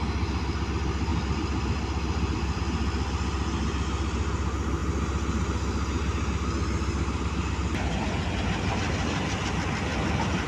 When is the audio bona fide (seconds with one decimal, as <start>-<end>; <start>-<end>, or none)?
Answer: 0.0-1.1; 2.6-10.5